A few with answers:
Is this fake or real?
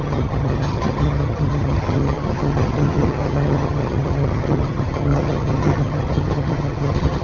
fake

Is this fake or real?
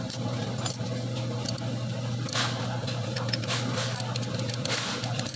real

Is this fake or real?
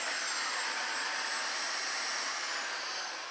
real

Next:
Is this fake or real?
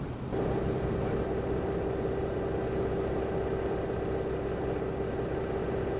real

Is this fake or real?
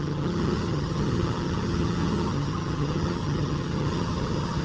fake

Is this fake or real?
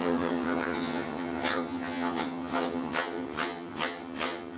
fake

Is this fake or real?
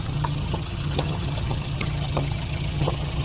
fake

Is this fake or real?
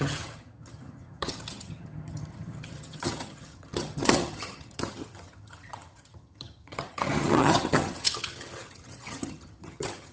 fake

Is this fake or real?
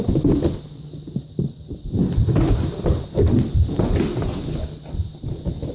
real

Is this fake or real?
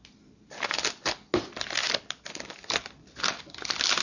real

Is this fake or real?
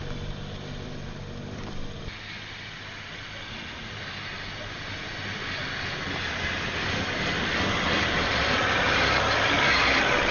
real